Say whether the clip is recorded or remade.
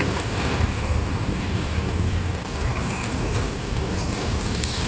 remade